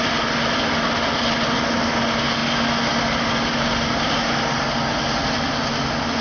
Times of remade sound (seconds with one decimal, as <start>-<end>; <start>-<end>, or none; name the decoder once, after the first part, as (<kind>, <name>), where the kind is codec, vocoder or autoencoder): none